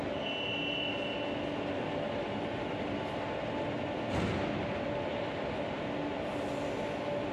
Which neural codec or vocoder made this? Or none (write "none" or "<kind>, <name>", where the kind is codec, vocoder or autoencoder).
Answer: none